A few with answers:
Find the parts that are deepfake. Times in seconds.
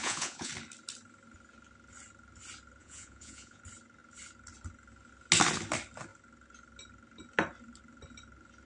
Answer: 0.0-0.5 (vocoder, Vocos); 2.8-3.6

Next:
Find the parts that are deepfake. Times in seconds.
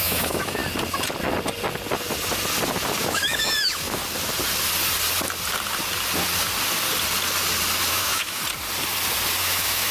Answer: 0.0-0.6 (autoencoder, DAC-VAE); 3.0-4.0; 7.9-8.4; 9.4-9.9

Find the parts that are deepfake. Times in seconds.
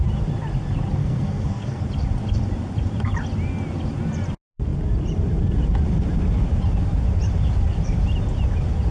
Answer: 1.0-1.8 (codec, SNAC)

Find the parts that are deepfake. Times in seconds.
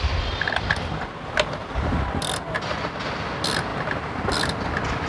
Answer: 1.6-2.2 (vocoder, BigVGAN v2); 3.7-4.2